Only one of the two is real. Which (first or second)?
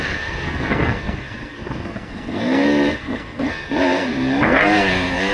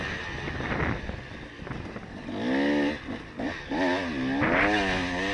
second